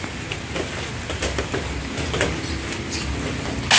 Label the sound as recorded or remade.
recorded